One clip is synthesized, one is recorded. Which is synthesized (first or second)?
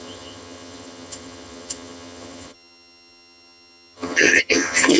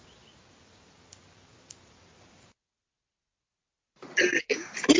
first